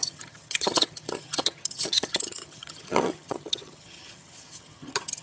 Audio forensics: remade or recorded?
remade